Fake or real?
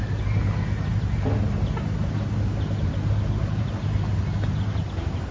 real